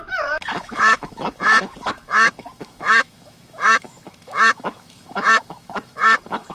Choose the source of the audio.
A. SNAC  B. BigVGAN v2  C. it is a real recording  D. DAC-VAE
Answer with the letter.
D